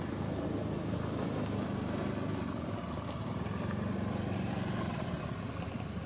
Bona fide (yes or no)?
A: yes